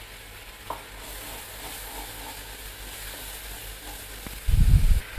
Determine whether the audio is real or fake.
real